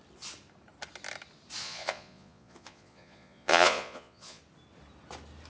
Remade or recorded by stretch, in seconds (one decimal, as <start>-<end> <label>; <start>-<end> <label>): 0.0-1.6 recorded; 1.6-4.4 remade; 4.4-5.5 recorded